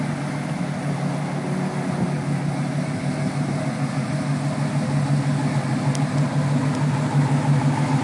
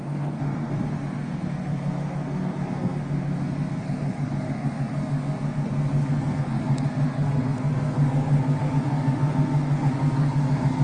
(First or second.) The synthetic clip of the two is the second